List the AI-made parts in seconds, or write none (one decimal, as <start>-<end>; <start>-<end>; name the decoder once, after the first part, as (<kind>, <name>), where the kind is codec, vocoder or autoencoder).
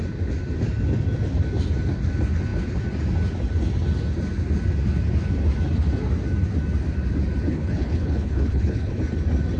7.5-9.0 (codec, HILCodec)